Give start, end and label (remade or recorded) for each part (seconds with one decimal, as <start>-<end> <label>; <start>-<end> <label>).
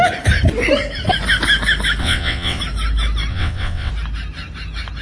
0.0-2.0 recorded; 2.0-2.6 remade; 2.6-3.3 recorded; 3.3-3.9 remade; 3.9-5.0 recorded